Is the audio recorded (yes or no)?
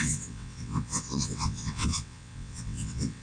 no